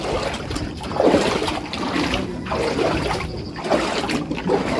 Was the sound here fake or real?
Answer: real